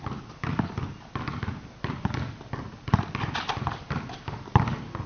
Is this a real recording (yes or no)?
yes